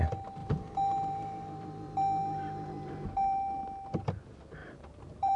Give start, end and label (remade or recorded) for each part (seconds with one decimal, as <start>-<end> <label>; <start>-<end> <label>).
0.0-0.4 recorded; 0.4-3.6 remade; 3.6-4.6 recorded; 4.6-5.4 remade